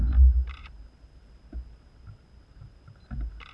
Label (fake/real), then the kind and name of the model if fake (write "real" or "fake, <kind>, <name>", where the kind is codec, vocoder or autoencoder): real